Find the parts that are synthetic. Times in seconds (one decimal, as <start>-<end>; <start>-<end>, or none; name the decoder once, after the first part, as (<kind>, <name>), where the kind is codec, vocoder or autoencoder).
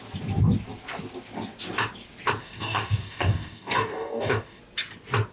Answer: 2.4-4.6 (codec, DAC)